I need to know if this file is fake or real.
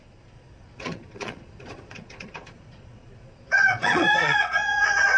fake